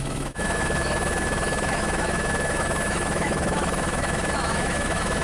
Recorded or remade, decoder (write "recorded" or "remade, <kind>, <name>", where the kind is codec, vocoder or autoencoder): remade, autoencoder, DAC-VAE